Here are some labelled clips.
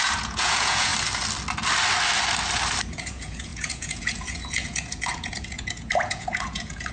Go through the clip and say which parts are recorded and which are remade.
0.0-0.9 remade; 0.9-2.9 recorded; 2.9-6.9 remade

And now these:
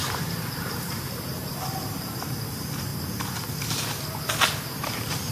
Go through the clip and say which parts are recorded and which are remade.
0.0-2.9 remade; 2.9-4.7 recorded; 4.7-5.3 remade

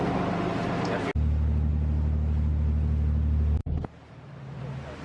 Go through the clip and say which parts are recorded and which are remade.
0.0-0.5 recorded; 0.5-1.0 remade; 1.0-3.6 recorded; 3.6-4.6 remade; 4.6-5.0 recorded

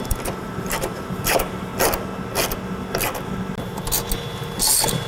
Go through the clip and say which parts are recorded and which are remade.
0.0-1.7 remade; 1.7-5.1 recorded